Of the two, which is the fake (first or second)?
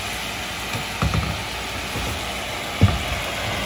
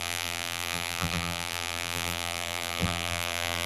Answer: second